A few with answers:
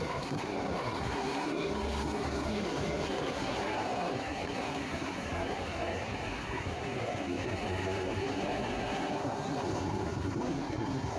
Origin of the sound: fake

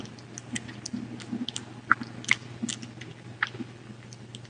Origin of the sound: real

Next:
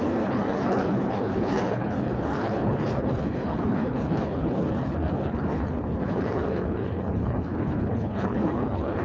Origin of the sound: fake